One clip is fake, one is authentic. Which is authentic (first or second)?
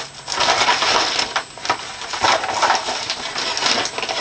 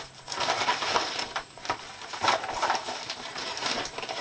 first